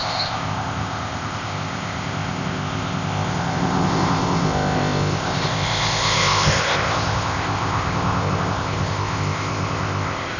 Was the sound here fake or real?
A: fake